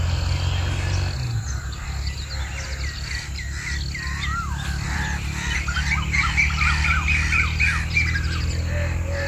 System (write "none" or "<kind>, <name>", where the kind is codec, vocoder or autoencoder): none